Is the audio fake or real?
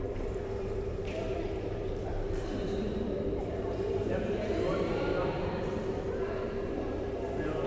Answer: fake